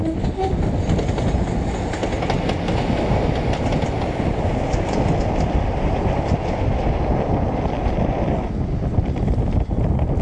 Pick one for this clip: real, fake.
real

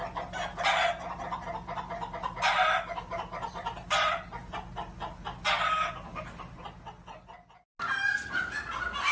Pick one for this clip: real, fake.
real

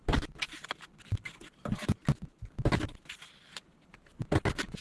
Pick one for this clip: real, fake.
real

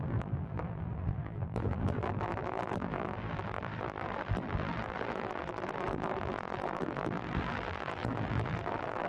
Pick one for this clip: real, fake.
fake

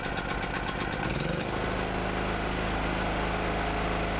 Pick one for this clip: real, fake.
real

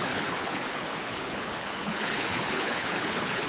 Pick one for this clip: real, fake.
fake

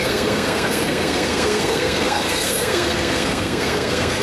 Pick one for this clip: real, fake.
fake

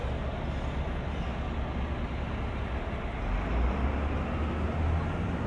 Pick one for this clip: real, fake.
real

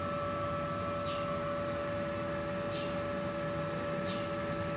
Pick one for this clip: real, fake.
real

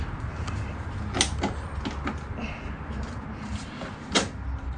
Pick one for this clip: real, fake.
real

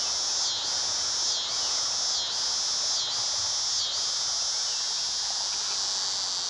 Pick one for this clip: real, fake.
real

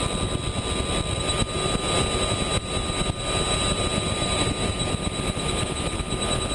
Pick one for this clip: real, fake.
real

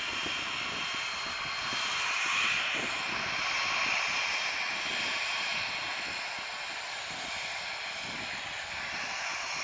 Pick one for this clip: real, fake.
real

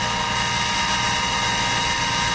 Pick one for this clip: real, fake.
real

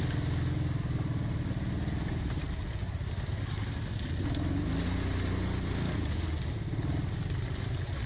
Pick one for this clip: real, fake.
real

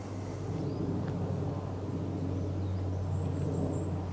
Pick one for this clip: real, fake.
real